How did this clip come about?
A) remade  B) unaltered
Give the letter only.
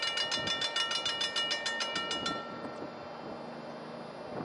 B